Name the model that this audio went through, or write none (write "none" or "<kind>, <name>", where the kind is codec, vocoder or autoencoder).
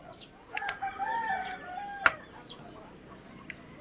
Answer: none